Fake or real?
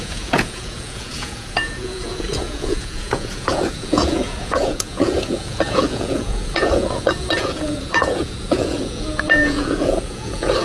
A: fake